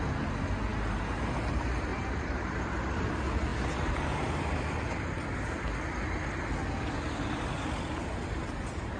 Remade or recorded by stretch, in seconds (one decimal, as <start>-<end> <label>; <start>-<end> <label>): 0.0-1.9 recorded; 1.9-3.0 remade; 3.0-9.0 recorded